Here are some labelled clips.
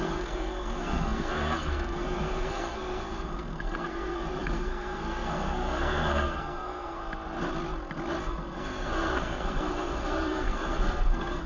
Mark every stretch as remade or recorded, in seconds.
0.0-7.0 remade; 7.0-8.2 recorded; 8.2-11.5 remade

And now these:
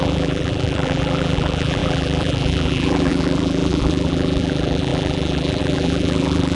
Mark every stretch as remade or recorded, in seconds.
0.0-6.5 remade

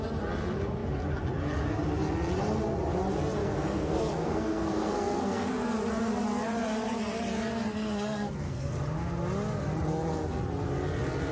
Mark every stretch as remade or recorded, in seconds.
0.0-3.4 recorded; 3.4-5.5 remade; 5.5-7.7 recorded; 7.7-8.7 remade; 8.7-11.3 recorded

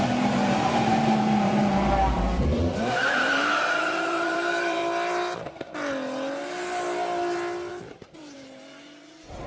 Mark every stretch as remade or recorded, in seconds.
0.0-4.8 remade; 4.8-7.7 recorded; 7.7-9.5 remade

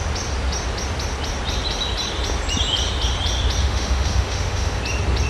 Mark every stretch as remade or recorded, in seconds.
0.0-3.6 recorded; 3.6-4.8 remade; 4.8-5.3 recorded

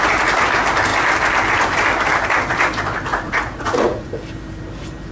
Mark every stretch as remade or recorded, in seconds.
0.0-3.1 recorded; 3.1-4.1 remade; 4.1-5.1 recorded